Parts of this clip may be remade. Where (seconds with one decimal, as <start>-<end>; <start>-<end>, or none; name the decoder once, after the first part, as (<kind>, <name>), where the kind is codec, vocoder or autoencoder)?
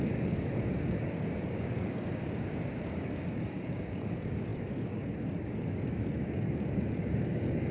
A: 0.0-7.7 (codec, DAC)